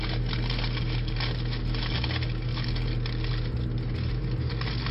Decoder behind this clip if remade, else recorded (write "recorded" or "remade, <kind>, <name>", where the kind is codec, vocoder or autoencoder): recorded